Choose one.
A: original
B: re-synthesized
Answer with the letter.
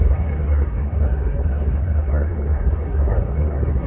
B